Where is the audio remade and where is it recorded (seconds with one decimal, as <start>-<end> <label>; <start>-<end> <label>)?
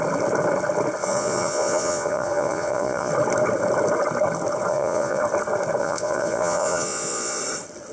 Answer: 0.0-1.0 recorded; 1.0-3.1 remade; 3.1-4.7 recorded; 4.7-5.2 remade; 5.2-5.8 recorded; 5.8-7.4 remade; 7.4-7.9 recorded